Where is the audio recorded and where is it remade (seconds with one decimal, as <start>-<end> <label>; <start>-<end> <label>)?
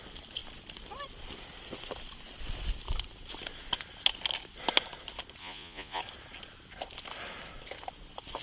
0.0-5.4 recorded; 5.4-6.0 remade; 6.0-8.4 recorded